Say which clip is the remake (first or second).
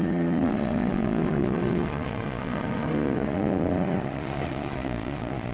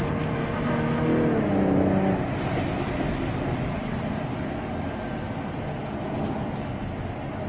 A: first